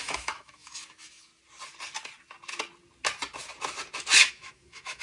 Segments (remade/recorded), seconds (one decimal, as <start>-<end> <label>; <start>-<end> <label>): 0.0-1.3 remade; 1.3-4.3 recorded; 4.3-5.0 remade